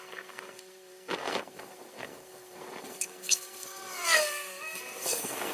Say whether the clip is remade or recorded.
remade